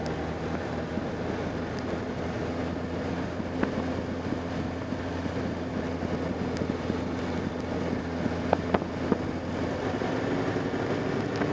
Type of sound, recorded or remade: recorded